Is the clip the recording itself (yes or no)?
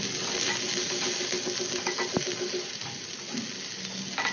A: yes